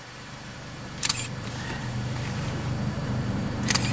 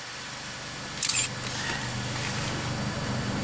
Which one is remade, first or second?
first